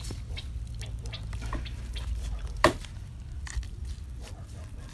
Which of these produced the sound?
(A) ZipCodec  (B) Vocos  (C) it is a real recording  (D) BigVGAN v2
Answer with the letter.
D